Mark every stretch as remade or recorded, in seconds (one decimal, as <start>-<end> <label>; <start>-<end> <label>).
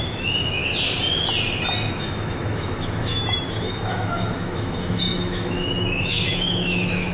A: 0.0-0.6 remade; 0.6-1.9 recorded; 1.9-7.1 remade